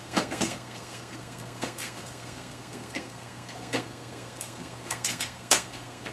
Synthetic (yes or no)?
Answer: yes